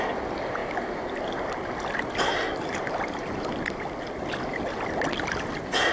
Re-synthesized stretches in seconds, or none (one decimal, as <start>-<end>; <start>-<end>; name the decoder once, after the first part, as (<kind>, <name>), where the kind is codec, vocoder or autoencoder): none